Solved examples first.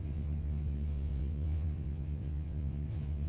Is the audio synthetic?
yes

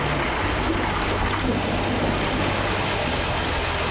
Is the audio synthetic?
no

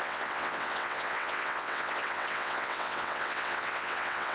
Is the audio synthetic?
yes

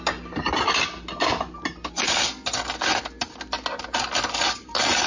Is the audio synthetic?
no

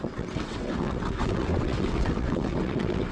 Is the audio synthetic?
yes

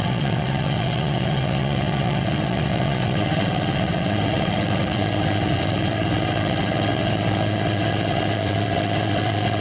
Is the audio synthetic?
yes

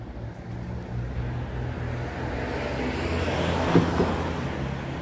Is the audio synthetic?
no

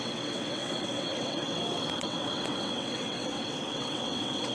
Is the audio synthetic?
yes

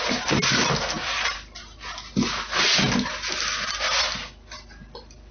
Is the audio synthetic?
no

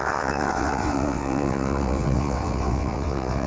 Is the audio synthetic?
yes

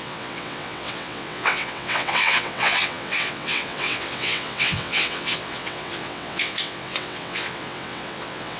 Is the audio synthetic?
yes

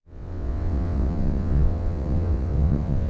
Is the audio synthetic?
yes